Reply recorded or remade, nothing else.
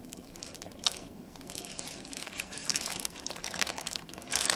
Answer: remade